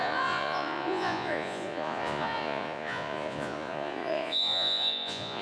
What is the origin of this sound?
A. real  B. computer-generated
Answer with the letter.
B